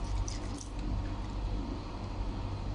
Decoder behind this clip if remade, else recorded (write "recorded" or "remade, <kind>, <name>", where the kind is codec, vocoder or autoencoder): recorded